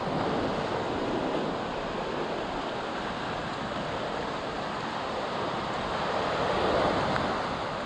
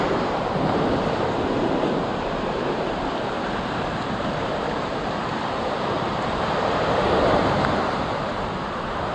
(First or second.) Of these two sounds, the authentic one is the first